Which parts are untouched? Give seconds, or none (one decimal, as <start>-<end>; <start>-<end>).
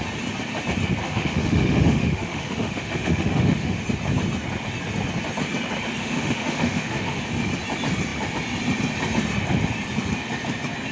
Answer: 0.0-1.0; 3.8-6.0; 7.2-10.9